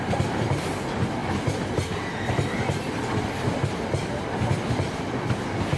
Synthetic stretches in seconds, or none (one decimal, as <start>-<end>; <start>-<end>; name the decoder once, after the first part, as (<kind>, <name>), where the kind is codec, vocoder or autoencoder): none